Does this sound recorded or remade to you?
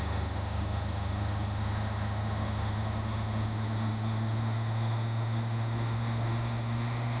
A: remade